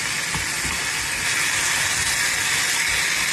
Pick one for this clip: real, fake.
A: real